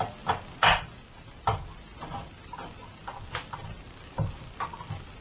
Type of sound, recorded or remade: recorded